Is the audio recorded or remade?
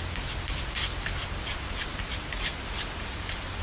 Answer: recorded